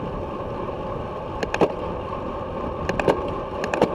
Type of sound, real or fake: real